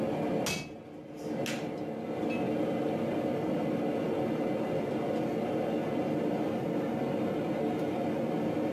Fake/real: real